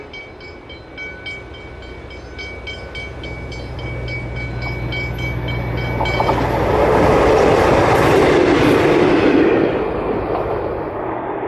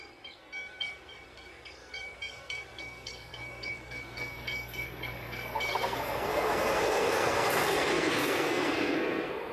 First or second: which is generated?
second